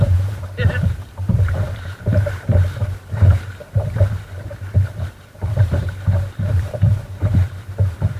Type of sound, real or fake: fake